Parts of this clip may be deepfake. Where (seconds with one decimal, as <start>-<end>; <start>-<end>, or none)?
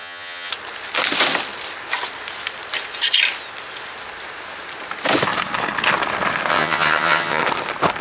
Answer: 0.0-0.5; 6.5-7.4